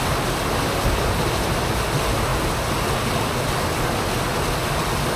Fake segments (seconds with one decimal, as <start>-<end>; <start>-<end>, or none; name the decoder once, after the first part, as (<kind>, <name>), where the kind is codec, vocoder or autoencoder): none